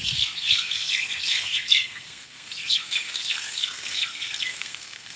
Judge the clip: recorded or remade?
remade